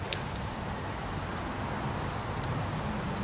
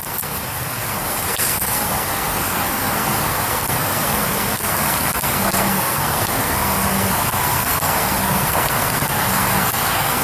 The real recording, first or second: first